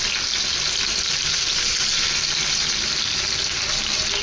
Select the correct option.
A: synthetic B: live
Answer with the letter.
B